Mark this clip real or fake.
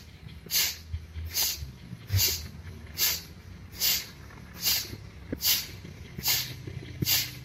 real